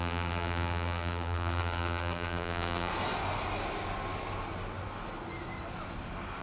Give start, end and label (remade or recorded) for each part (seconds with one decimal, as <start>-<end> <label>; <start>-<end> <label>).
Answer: 0.0-2.9 remade; 2.9-6.4 recorded